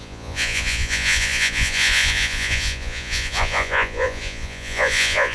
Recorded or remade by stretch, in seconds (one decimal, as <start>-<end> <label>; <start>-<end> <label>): 0.0-5.3 remade